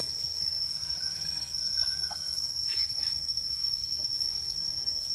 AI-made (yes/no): yes